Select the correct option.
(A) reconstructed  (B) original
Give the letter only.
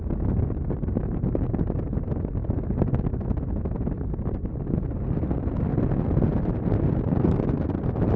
B